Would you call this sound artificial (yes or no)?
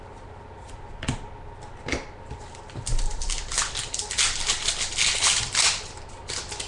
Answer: no